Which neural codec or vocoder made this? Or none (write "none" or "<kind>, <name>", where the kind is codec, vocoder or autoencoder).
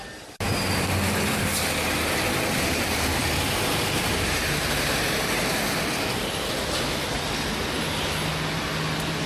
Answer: none